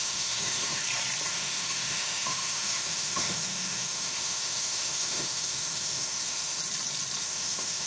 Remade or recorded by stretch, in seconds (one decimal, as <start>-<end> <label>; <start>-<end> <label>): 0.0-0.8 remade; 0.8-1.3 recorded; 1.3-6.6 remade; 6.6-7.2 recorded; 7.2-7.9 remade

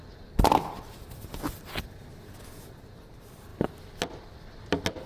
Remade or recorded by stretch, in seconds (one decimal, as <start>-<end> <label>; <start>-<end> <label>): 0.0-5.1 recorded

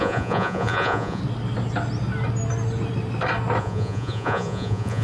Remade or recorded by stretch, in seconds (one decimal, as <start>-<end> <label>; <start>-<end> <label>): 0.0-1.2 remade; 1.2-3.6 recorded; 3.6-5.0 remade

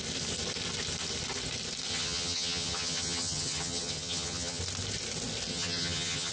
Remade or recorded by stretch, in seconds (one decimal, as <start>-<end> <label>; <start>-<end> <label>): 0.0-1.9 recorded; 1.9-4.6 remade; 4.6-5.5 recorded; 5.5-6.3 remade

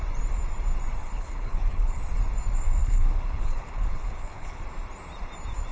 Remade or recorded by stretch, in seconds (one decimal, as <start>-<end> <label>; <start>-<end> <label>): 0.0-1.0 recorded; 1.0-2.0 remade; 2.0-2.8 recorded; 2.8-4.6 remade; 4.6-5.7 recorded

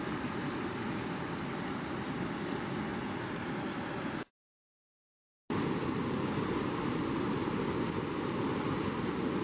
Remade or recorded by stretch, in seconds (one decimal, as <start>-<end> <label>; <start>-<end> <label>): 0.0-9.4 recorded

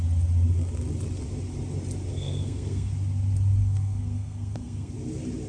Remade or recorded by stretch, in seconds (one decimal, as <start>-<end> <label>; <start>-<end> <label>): 0.0-2.1 recorded; 2.1-2.9 remade; 2.9-3.6 recorded; 3.6-4.9 remade; 4.9-5.5 recorded